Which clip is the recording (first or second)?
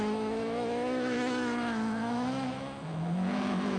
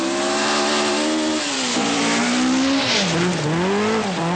second